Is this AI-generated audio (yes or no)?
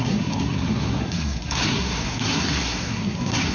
yes